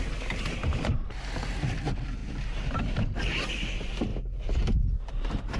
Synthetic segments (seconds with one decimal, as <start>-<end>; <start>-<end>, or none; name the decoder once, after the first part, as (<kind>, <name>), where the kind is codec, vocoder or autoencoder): 0.6-1.3 (vocoder, BigVGAN v2); 2.2-3.2